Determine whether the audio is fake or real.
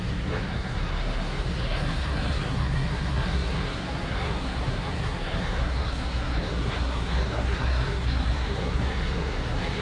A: fake